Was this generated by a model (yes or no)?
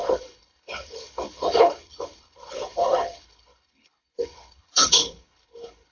yes